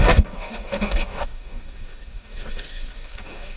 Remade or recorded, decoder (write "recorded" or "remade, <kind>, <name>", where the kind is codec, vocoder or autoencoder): remade, codec, DAC